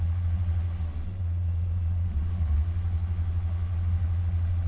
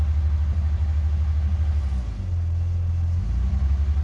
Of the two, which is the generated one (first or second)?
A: first